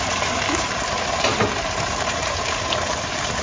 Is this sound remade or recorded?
remade